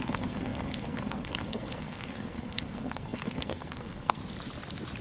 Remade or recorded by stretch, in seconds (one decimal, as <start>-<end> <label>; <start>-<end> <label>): 0.0-4.2 remade; 4.2-5.0 recorded